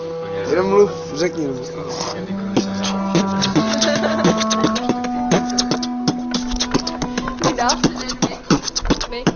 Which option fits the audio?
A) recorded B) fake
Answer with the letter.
A